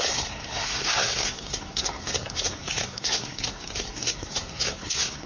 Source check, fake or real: fake